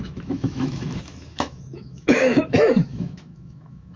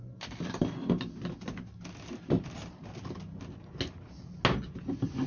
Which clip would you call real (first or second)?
second